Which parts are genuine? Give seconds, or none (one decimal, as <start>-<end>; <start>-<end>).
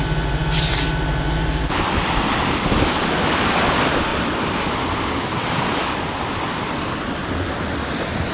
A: 0.0-4.1; 5.2-8.3